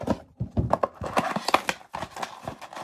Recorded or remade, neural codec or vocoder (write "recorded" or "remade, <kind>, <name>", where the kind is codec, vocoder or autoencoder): recorded